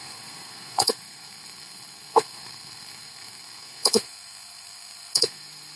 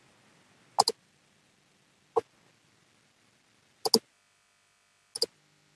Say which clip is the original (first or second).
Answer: second